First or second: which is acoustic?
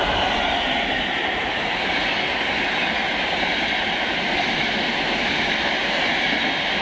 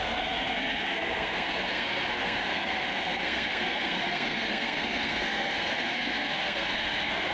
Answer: first